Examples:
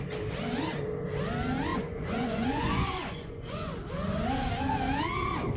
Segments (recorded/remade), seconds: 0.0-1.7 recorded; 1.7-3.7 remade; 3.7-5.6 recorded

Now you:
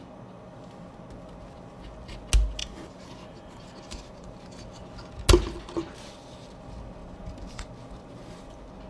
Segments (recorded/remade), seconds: 0.0-2.6 recorded; 2.6-4.5 remade; 4.5-7.0 recorded; 7.0-7.6 remade; 7.6-8.9 recorded